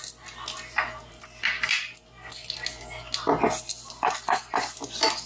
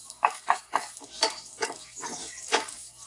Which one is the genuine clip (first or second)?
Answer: first